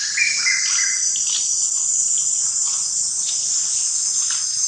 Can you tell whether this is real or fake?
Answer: real